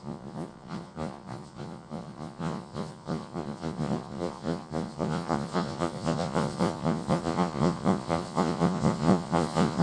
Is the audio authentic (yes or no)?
no